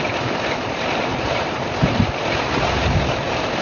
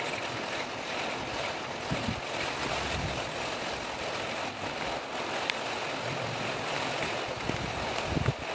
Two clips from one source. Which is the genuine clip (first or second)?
second